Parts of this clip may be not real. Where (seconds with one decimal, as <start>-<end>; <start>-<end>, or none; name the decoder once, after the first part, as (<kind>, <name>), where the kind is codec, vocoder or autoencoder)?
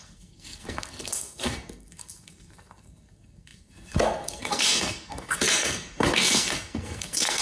0.0-7.4 (codec, SNAC)